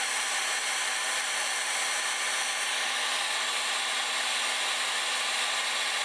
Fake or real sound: real